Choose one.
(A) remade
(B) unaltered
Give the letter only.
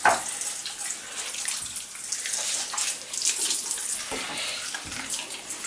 B